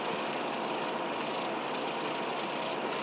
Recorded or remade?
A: recorded